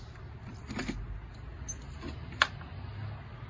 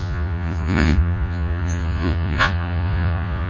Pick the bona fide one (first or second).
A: first